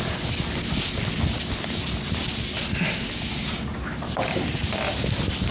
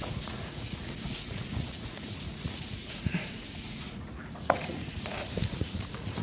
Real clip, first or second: first